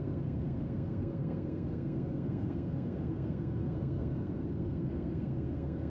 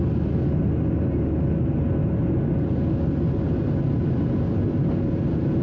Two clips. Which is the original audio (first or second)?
second